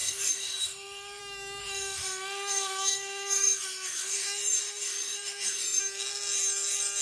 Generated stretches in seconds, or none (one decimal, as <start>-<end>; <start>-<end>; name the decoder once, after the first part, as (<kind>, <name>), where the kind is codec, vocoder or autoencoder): 0.0-1.2 (autoencoder, DAC-VAE); 1.6-5.8